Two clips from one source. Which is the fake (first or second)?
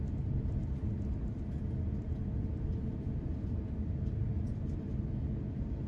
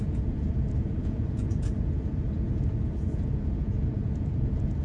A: second